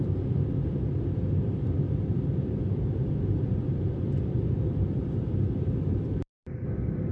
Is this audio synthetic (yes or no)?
yes